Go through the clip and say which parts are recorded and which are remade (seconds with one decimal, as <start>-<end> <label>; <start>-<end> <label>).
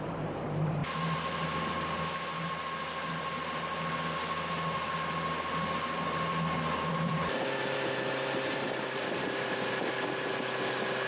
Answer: 0.0-7.1 recorded; 7.1-9.7 remade; 9.7-11.1 recorded